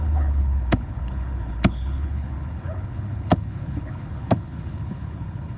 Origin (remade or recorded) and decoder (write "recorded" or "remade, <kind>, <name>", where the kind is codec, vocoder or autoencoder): remade, codec, HILCodec